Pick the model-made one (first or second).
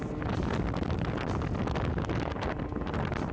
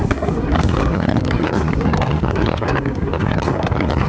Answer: second